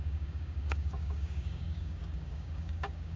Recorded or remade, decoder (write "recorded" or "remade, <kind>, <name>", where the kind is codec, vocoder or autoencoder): remade, codec, DAC